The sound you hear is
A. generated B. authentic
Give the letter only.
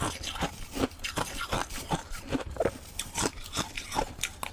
B